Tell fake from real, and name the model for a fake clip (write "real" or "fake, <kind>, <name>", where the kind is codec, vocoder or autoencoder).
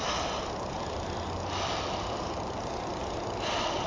real